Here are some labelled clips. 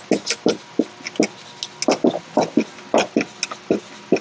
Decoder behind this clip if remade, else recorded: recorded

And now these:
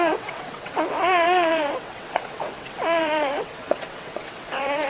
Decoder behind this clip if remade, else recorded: remade, vocoder, WaveNeXt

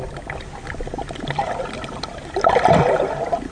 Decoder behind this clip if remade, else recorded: recorded